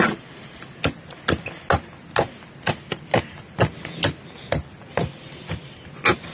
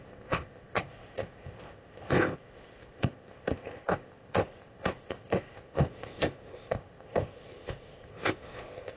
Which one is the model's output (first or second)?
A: second